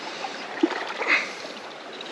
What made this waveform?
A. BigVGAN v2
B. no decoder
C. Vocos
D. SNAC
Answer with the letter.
A